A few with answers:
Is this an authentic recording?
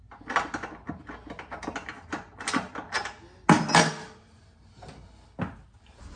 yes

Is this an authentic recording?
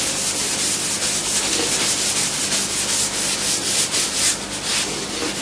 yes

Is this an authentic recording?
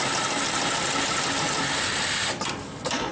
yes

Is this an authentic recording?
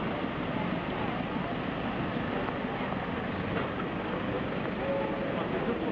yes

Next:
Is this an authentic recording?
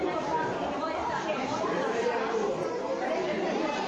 no